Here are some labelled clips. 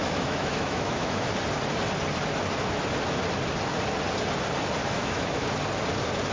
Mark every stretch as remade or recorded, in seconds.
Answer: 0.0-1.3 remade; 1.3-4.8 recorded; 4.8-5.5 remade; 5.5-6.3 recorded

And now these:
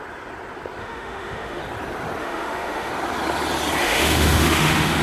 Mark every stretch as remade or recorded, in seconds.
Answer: 0.0-0.8 recorded; 0.8-1.6 remade; 1.6-2.2 recorded; 2.2-2.9 remade; 2.9-3.8 recorded; 3.8-5.0 remade

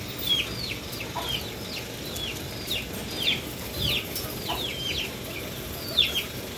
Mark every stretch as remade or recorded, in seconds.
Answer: 0.0-3.0 recorded; 3.0-4.6 remade; 4.6-6.6 recorded

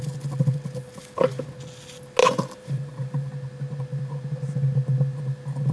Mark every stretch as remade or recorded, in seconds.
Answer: 0.0-2.2 recorded; 2.2-3.3 remade; 3.3-5.7 recorded